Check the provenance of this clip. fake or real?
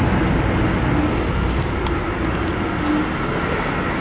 real